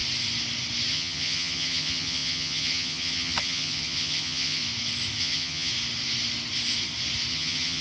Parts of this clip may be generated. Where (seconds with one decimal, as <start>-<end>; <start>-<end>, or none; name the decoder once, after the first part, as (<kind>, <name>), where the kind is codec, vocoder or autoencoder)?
0.9-4.6 (vocoder, HiFi-GAN); 5.2-5.7; 7.3-7.8